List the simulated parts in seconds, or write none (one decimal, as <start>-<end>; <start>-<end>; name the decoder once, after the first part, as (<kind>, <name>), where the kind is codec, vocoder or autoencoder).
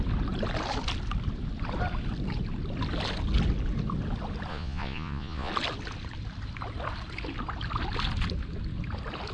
4.5-5.5 (vocoder, Vocos)